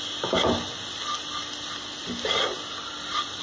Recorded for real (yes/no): yes